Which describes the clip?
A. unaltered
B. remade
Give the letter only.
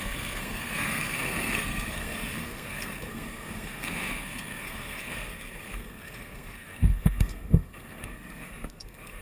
B